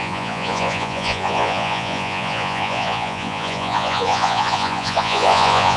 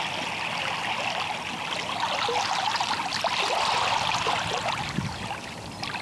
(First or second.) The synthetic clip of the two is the first